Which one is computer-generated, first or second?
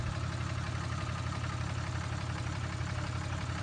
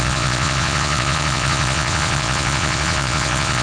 second